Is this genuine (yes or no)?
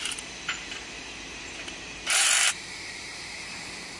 no